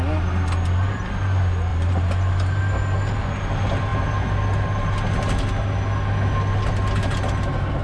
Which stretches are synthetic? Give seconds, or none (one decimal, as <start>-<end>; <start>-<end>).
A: 1.7-2.6